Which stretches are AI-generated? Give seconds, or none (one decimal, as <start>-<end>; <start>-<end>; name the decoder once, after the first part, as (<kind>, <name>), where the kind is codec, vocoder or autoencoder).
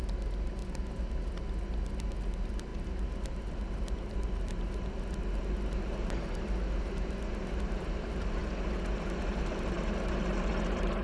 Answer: 0.0-0.6 (vocoder, BigVGAN v2); 2.3-8.4; 9.2-11.0